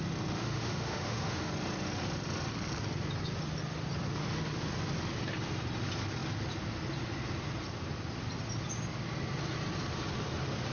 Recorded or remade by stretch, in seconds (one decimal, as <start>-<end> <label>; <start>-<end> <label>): 0.0-0.4 recorded; 0.4-1.5 remade; 1.5-10.7 recorded